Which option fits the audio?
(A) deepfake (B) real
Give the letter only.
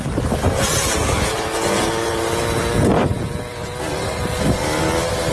B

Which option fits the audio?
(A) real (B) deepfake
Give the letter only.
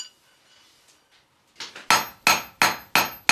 A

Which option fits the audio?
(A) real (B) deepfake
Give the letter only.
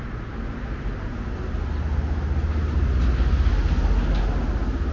A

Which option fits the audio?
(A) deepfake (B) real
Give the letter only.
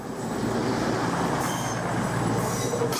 B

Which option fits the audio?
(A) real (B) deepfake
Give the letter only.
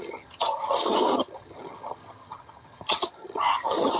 B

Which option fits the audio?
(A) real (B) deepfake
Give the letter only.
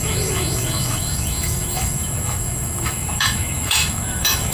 B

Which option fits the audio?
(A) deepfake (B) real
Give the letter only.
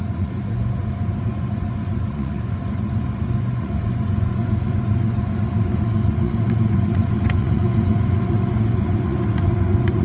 A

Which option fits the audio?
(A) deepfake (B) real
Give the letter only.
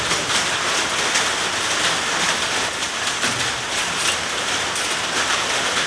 B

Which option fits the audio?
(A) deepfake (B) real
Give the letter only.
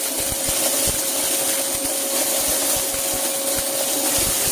B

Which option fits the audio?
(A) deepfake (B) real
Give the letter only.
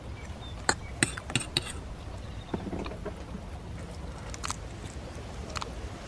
B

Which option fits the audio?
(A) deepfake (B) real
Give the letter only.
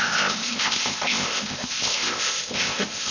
A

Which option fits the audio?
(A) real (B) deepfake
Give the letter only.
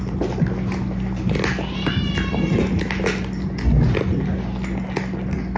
A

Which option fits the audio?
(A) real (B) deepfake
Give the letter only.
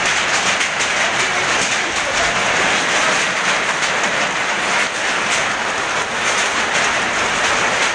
A